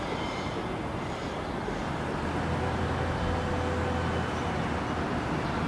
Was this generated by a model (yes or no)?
no